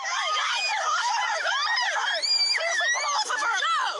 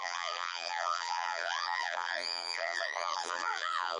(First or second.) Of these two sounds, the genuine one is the first